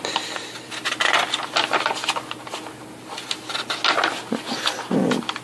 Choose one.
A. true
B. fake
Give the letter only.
A